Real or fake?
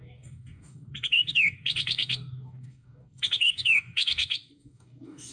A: fake